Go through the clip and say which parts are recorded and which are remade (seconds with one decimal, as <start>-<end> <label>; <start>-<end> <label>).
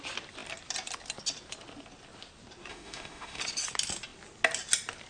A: 0.0-2.7 recorded; 2.7-3.4 remade; 3.4-5.1 recorded